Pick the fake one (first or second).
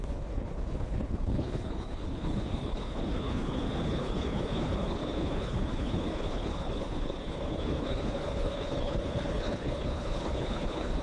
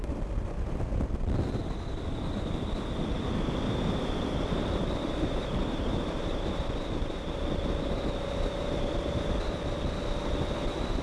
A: first